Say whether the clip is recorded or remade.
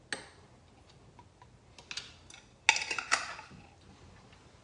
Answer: recorded